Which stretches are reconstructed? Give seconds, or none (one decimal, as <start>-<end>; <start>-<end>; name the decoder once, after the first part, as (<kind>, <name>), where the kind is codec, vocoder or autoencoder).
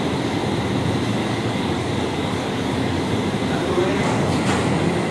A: 1.2-3.1 (codec, DAC); 3.6-4.4